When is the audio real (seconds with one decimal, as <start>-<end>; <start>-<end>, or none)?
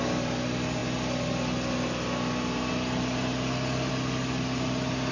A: 0.0-5.1